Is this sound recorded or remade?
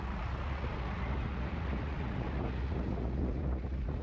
remade